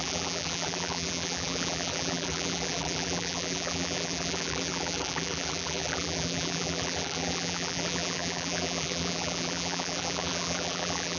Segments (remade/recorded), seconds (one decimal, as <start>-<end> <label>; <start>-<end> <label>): 0.0-11.2 remade